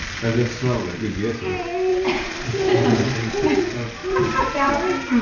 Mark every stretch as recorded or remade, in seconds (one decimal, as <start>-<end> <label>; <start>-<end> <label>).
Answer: 0.0-1.9 recorded; 1.9-3.6 remade; 3.6-4.0 recorded; 4.0-4.7 remade; 4.7-5.2 recorded